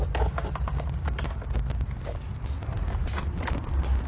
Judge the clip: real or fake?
real